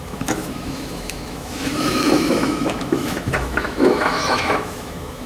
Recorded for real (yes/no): no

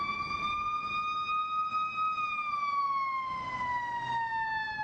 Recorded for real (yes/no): yes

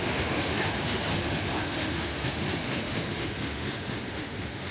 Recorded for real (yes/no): no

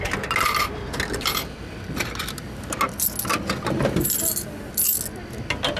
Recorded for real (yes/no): yes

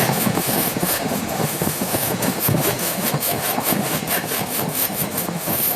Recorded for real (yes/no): no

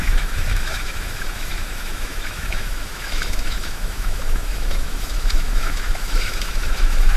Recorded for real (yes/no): no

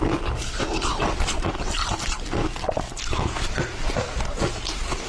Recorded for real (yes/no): yes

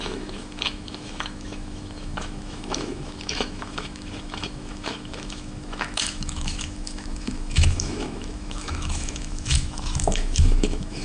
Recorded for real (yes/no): no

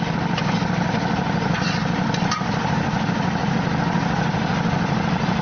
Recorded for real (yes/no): yes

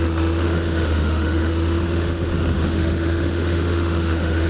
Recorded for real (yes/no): no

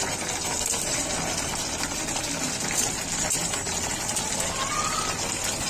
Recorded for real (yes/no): yes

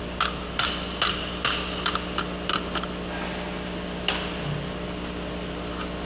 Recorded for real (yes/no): yes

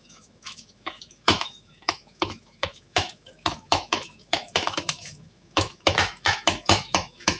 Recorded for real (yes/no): no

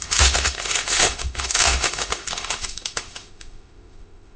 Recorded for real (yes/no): no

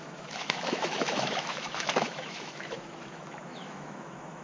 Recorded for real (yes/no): no